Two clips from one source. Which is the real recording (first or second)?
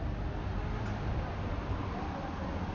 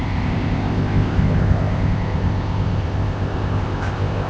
first